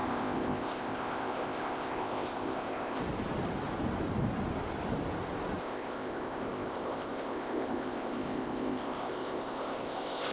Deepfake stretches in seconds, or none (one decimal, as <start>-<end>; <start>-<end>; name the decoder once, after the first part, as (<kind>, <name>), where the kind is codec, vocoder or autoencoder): 0.0-3.0 (codec, ZipCodec); 5.6-10.3